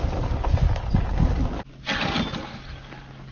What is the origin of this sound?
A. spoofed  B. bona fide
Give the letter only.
B